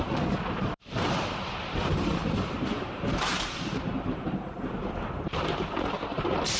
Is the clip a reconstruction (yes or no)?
yes